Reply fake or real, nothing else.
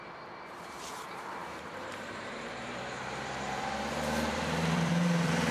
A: fake